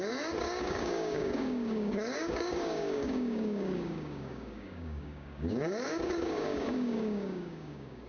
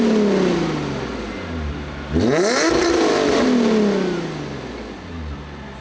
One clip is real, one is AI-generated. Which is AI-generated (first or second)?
first